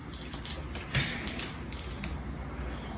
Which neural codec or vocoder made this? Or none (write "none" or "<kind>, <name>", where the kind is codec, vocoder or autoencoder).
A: none